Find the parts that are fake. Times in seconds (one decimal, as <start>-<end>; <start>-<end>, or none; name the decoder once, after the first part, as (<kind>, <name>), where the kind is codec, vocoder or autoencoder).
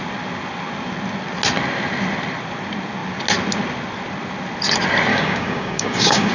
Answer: 5.1-6.3 (codec, DAC)